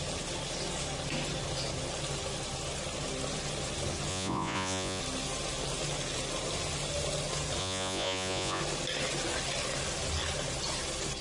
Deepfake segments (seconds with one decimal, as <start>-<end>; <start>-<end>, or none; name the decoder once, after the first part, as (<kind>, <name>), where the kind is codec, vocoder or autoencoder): 4.1-5.0 (vocoder, Vocos); 7.6-8.6